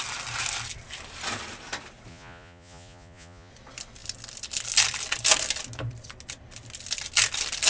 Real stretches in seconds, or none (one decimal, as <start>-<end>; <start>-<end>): 0.0-2.1; 3.5-7.7